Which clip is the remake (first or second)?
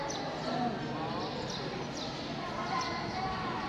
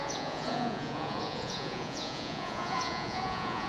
second